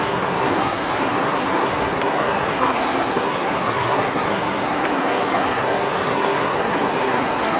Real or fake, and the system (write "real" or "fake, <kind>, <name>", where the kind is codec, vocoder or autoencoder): fake, codec, SNAC